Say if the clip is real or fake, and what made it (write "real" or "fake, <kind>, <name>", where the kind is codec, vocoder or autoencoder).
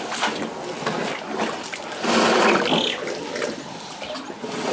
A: real